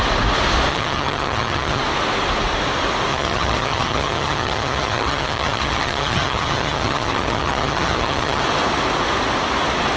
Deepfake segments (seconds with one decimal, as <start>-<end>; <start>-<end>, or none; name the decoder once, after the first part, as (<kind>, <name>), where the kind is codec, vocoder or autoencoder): 0.7-1.8 (vocoder, HiFi-GAN); 3.1-8.4